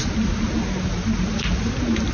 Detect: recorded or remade recorded